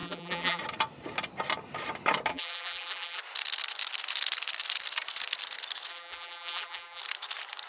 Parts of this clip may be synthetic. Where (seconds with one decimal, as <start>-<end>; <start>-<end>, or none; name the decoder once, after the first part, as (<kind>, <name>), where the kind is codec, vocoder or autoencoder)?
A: 0.0-0.6 (vocoder, BigVGAN v2); 2.3-3.2; 5.9-7.0